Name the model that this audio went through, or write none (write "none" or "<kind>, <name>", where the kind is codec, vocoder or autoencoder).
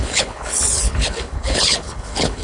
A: codec, HILCodec